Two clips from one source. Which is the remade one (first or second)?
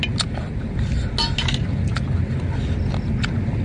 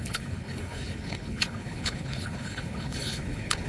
second